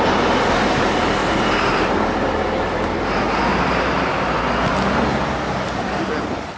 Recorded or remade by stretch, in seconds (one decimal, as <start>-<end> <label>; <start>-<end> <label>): 0.0-1.2 recorded; 1.2-1.8 remade; 1.8-3.5 recorded; 3.5-4.1 remade; 4.1-6.6 recorded

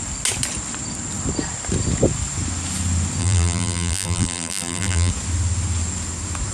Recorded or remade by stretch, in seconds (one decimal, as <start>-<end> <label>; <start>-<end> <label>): 0.0-3.2 recorded; 3.2-5.1 remade; 5.1-6.5 recorded